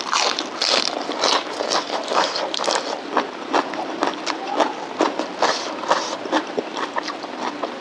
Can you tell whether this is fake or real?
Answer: fake